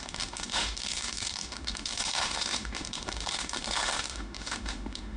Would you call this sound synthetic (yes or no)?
yes